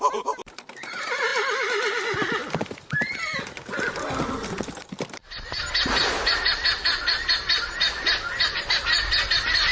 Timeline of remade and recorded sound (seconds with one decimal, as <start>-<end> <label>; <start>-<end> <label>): 0.0-9.7 recorded